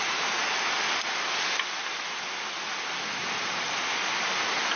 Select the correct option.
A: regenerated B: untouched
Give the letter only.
B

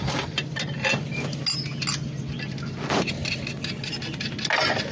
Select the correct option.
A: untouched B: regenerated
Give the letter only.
A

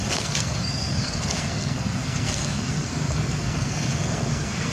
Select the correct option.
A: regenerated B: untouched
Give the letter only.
A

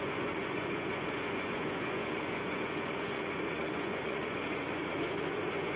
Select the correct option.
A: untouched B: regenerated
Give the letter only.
B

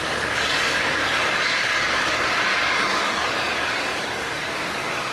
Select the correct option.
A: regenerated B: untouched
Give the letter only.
A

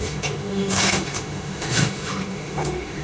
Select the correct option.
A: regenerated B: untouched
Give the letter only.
A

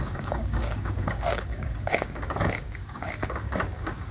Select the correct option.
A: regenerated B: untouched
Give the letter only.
A